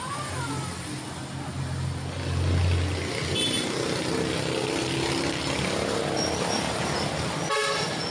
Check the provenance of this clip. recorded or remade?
recorded